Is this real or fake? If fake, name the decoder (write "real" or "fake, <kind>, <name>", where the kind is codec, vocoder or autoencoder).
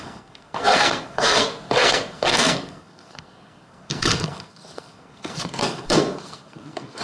fake, codec, SNAC